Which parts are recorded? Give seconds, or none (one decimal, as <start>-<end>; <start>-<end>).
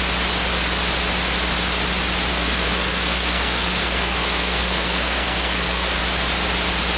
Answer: 0.0-2.3; 6.0-7.0